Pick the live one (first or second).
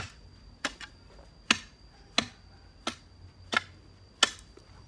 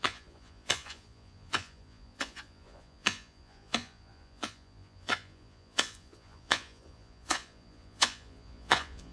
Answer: first